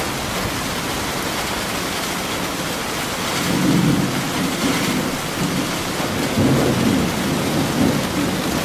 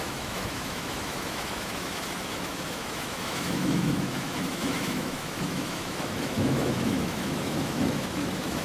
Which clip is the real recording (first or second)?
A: first